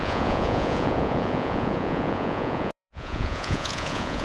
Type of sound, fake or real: fake